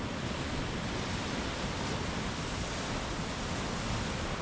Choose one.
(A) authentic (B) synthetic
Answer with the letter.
A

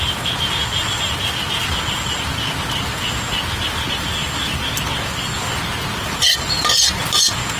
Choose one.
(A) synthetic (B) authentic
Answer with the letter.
B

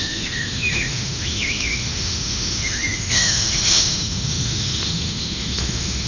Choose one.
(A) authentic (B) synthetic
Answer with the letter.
B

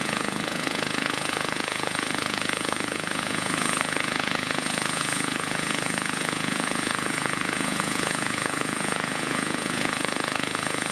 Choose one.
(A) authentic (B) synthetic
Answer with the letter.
B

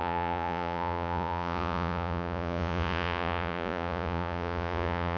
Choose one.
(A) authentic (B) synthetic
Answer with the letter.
B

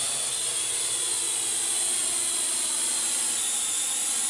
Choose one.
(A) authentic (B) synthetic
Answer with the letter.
A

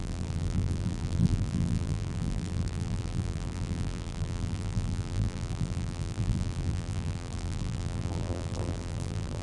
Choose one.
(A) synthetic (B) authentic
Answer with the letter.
A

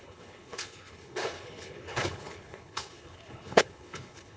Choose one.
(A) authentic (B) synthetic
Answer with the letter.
B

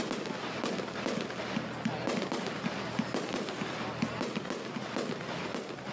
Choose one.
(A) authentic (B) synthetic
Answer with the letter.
A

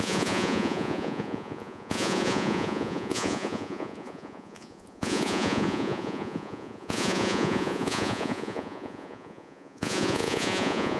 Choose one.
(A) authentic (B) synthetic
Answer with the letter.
B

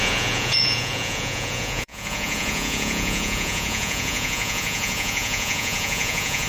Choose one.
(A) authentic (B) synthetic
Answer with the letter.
B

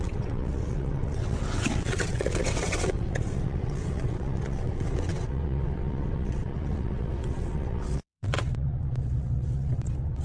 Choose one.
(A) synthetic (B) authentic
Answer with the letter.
A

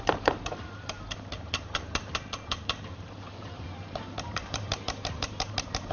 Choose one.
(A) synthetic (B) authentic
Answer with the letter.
A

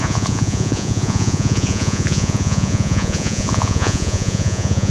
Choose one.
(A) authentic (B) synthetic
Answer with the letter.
B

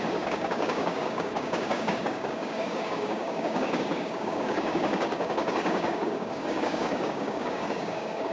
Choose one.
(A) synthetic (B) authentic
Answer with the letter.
A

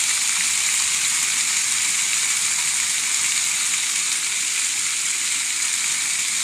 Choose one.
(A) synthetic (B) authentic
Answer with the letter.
B